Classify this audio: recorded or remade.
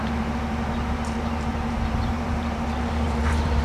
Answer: remade